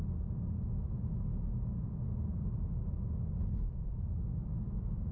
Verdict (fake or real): real